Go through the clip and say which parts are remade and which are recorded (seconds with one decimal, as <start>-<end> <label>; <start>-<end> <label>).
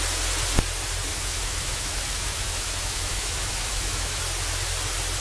0.0-1.1 recorded; 1.1-4.2 remade; 4.2-5.2 recorded